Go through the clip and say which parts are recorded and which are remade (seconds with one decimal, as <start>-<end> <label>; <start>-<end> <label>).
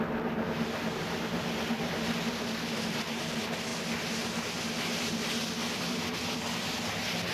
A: 0.0-7.3 recorded